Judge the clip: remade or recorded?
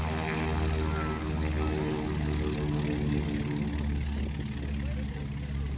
recorded